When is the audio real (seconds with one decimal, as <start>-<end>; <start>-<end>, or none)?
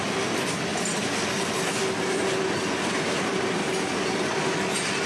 0.0-5.1